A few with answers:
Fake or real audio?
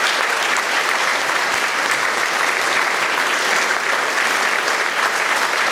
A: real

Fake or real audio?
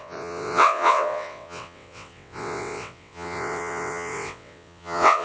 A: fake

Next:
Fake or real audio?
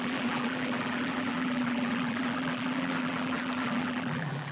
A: fake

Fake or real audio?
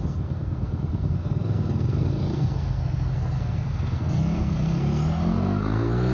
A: fake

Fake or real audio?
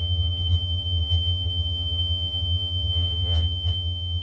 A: fake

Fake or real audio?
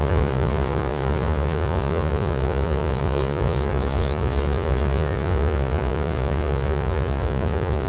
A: fake